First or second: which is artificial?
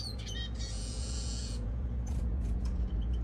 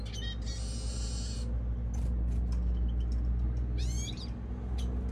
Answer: first